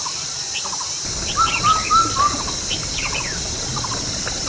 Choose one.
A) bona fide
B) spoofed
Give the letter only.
A